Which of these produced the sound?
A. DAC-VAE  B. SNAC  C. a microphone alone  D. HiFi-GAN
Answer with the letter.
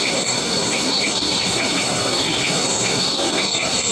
B